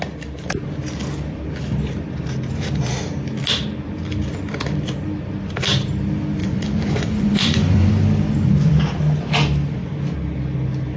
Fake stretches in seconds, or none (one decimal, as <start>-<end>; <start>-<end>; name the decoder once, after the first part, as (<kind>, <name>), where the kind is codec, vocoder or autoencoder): 6.4-7.9 (vocoder, Vocos)